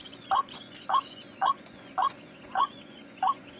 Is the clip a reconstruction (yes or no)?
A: yes